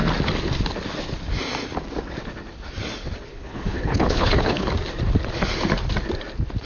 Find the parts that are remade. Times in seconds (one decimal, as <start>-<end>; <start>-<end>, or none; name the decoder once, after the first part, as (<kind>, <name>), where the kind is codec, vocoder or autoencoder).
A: 3.3-4.7 (codec, HILCodec)